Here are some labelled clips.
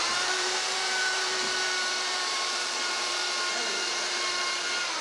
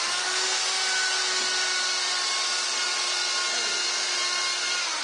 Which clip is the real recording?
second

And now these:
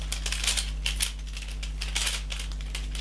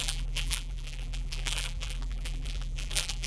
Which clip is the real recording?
first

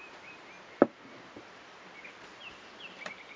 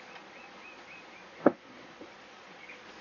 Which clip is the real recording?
first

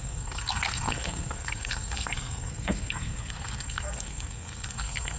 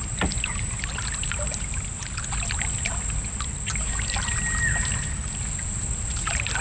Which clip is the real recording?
second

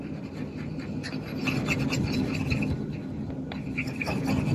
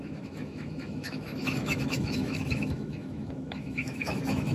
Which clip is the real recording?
first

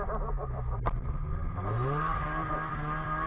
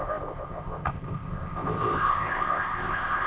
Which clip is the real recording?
first